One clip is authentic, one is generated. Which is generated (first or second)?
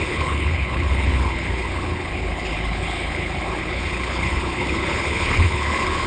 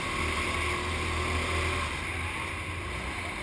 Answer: first